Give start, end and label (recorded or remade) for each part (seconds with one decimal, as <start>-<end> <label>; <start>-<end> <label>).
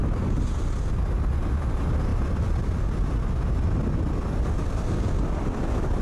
0.0-6.0 recorded